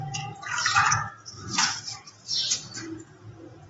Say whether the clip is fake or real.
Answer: fake